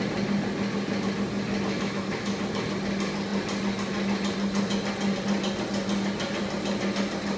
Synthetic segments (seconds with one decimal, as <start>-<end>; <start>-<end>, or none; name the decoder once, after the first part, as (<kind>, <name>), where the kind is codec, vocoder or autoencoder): 1.7-2.4 (autoencoder, DAC-VAE)